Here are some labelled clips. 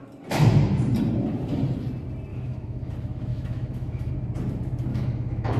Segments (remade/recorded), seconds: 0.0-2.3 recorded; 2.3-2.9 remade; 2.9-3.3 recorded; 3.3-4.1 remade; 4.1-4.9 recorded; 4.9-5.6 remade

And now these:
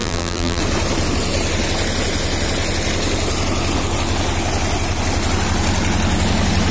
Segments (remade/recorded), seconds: 0.0-0.6 remade; 0.6-6.7 recorded

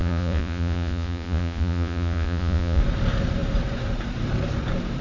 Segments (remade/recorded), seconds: 0.0-2.8 remade; 2.8-5.0 recorded

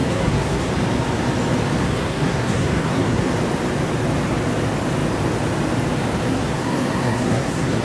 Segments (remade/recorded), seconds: 0.0-0.7 remade; 0.7-1.8 recorded; 1.8-3.3 remade; 3.3-6.3 recorded; 6.3-7.8 remade

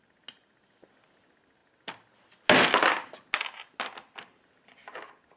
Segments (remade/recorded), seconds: 0.0-5.4 recorded

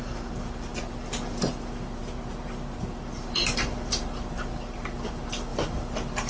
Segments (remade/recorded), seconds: 0.0-0.7 remade; 0.7-1.5 recorded; 1.5-2.0 remade; 2.0-2.9 recorded; 2.9-6.3 remade

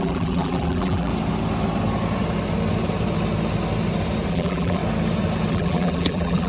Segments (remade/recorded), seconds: 0.0-1.1 remade; 1.1-4.3 recorded; 4.3-4.8 remade; 4.8-5.5 recorded; 5.5-6.5 remade

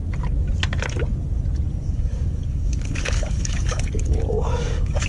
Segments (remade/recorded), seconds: 0.0-1.7 recorded; 1.7-5.1 remade